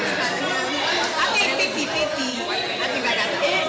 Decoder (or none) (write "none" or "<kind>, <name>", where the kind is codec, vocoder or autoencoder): vocoder, BigVGAN v2